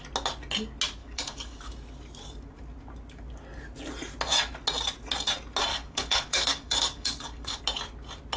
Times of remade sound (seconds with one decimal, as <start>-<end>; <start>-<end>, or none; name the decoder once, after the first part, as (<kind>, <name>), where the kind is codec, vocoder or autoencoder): 1.0-1.7 (codec, DAC); 5.7-7.6